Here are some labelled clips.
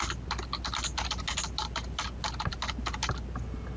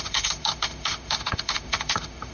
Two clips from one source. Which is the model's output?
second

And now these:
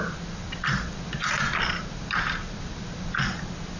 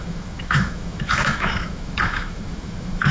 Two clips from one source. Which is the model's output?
second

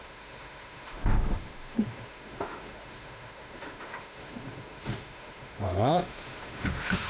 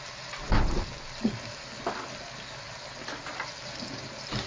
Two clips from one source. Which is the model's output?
first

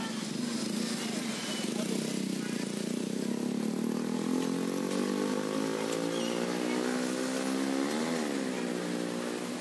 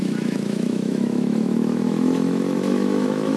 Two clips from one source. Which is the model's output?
second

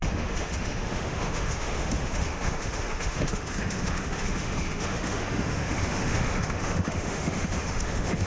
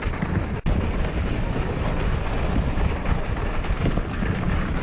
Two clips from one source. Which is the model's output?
first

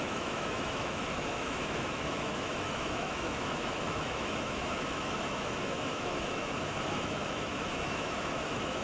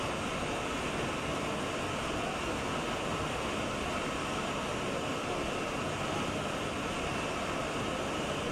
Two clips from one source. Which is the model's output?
first